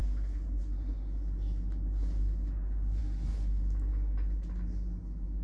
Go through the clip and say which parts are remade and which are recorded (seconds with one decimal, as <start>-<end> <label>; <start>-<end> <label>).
0.0-5.4 recorded